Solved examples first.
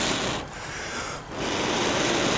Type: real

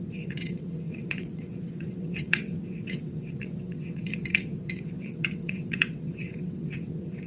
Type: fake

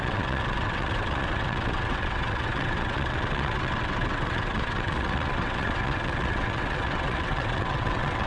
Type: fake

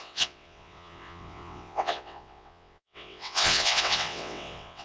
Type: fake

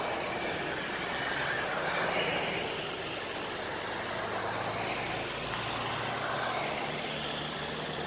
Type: real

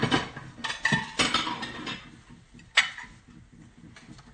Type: real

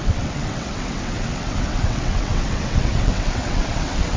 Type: fake